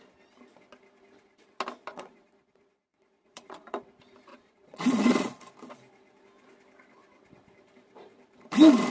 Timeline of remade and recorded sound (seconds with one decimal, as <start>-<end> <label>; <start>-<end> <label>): 0.0-1.9 recorded; 1.9-3.9 remade; 3.9-4.3 recorded; 4.3-5.4 remade; 5.4-8.9 recorded